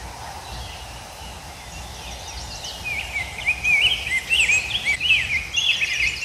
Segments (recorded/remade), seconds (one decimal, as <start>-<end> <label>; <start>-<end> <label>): 0.0-6.2 recorded